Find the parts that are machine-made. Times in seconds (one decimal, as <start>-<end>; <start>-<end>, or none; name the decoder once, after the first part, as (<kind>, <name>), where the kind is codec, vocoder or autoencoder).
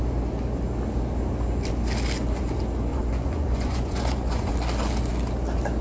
2.9-4.5 (vocoder, Vocos)